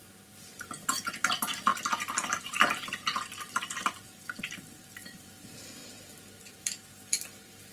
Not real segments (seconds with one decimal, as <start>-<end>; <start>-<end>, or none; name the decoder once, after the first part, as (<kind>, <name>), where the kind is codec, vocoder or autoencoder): 0.0-1.7 (vocoder, BigVGAN v2); 2.4-3.1; 3.7-7.7